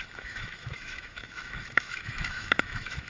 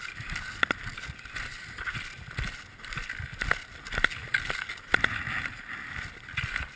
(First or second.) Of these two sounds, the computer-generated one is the first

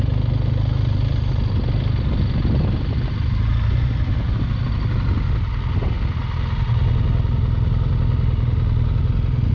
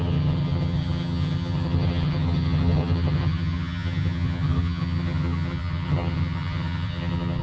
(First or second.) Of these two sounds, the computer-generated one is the second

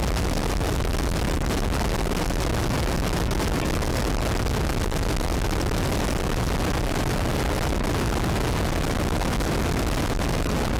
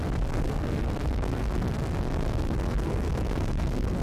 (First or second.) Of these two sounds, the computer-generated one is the second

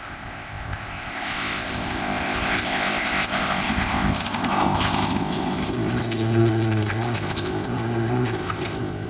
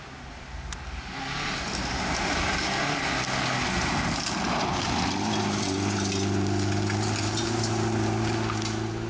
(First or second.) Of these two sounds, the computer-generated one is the first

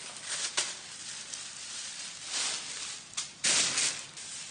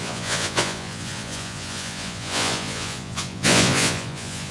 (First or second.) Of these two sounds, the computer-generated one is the second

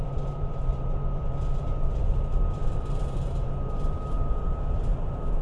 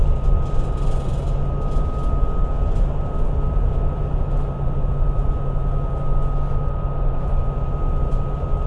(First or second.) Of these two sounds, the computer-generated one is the first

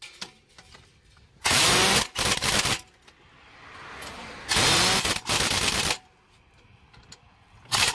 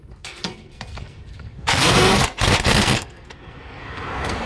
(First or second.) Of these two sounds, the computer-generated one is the second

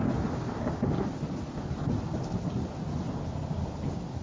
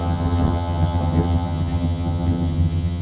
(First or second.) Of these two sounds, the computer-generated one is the second